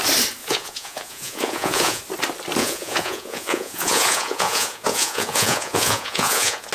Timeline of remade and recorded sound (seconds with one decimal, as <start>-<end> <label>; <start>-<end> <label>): 0.0-0.4 recorded; 0.4-2.0 remade; 2.0-2.6 recorded; 2.6-6.7 remade